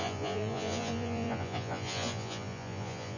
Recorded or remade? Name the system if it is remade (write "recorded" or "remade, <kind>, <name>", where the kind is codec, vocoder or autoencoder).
remade, vocoder, Vocos